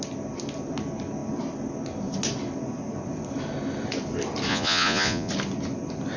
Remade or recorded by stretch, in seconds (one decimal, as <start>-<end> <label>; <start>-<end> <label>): 0.0-4.5 recorded; 4.5-5.3 remade; 5.3-6.2 recorded